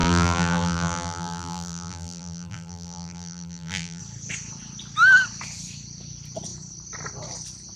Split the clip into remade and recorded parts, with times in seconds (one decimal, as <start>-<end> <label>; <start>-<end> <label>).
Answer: 0.0-4.0 remade; 4.0-7.8 recorded